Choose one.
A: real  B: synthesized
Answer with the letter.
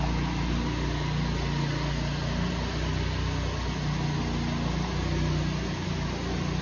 A